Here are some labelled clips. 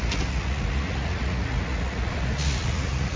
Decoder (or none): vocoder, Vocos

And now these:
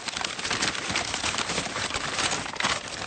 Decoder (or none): none